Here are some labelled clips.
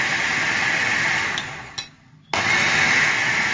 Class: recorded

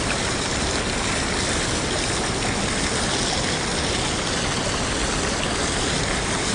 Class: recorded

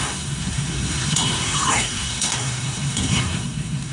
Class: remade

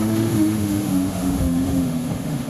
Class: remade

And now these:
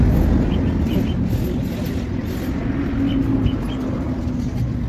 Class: recorded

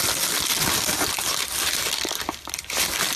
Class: recorded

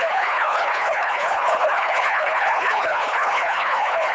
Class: remade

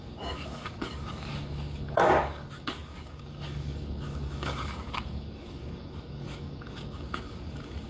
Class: remade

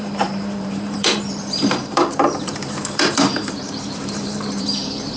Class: remade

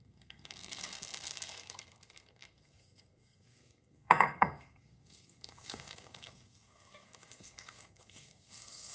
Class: remade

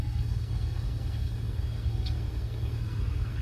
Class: remade